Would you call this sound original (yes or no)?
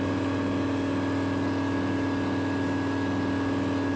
yes